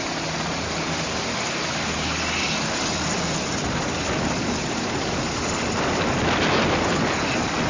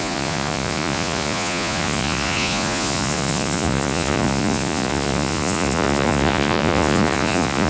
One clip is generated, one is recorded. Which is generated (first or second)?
second